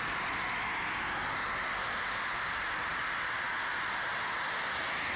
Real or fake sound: real